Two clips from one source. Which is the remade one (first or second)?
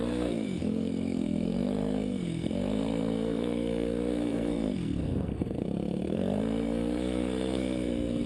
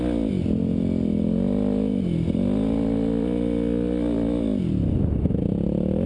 first